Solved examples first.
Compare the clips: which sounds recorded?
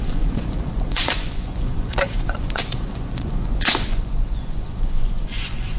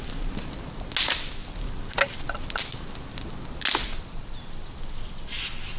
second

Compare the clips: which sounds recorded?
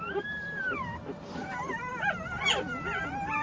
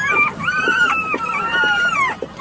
first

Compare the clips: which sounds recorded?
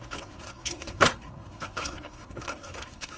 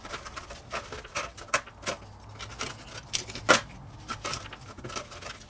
second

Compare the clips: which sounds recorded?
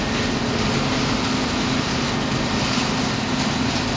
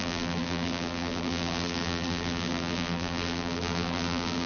first